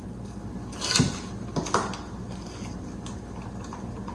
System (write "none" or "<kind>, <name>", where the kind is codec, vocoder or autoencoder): none